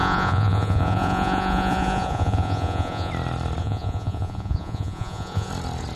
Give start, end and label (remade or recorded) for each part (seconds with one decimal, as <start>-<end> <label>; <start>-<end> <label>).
0.0-3.1 remade; 3.1-3.6 recorded; 3.6-5.5 remade; 5.5-6.0 recorded